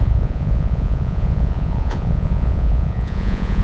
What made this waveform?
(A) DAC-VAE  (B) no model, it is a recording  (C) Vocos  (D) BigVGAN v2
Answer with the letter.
C